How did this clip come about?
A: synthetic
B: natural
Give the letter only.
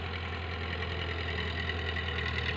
B